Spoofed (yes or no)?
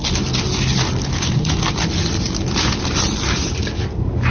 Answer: no